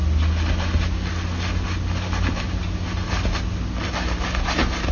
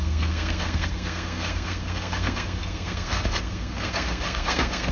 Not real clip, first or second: second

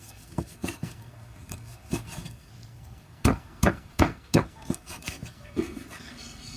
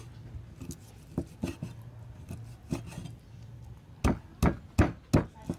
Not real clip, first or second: first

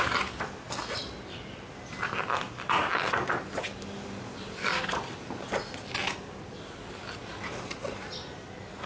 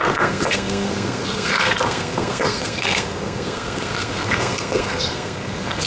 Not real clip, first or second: second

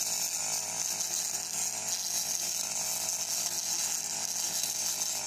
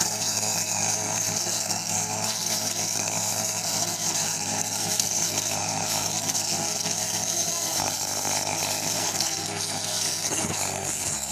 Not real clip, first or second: second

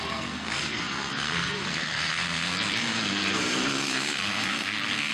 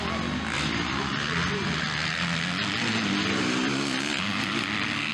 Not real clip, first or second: first